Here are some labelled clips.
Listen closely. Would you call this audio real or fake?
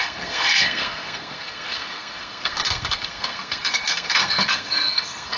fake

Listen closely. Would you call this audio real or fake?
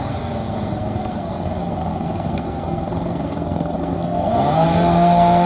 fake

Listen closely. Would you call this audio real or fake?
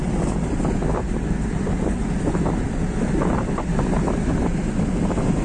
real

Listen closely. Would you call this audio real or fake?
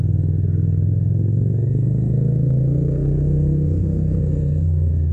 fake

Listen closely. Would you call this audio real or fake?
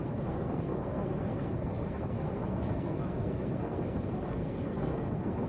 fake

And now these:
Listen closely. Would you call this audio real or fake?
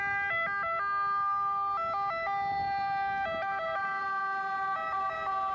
real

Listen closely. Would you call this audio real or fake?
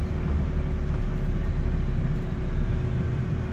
real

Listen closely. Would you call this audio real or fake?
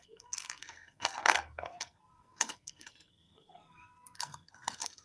fake